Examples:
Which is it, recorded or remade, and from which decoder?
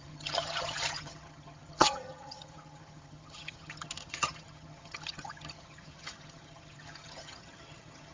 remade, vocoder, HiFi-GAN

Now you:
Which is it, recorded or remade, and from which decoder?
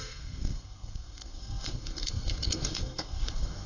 remade, codec, SNAC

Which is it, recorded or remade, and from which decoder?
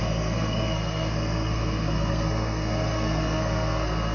remade, codec, SNAC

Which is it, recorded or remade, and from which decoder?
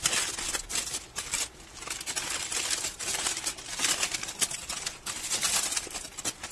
recorded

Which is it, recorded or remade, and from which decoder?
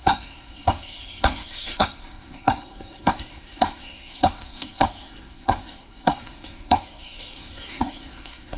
remade, codec, SNAC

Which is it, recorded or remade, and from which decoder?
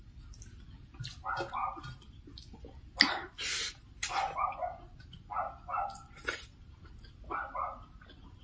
recorded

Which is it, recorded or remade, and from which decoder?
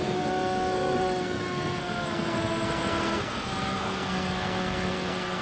remade, codec, SNAC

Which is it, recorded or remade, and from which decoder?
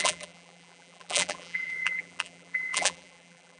remade, vocoder, BigVGAN v2